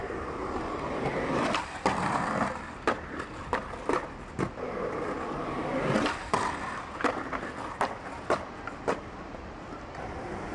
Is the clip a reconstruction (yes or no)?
no